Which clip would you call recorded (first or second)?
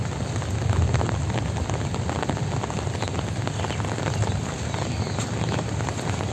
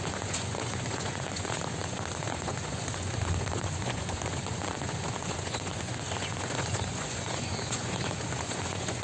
first